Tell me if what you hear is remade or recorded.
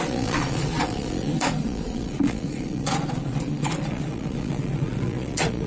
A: remade